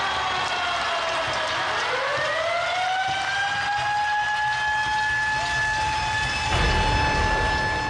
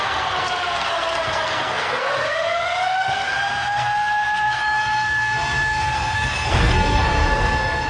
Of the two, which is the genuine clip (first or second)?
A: first